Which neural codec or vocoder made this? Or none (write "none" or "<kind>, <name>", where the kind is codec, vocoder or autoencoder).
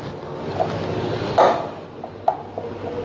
none